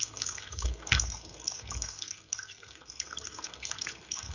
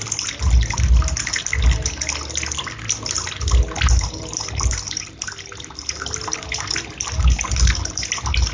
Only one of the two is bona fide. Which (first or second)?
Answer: second